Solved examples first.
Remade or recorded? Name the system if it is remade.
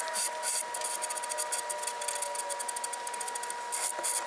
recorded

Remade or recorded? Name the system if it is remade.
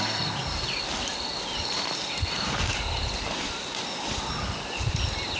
recorded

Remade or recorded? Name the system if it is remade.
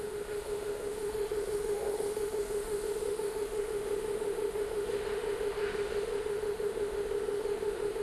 remade, autoencoder, DAC-VAE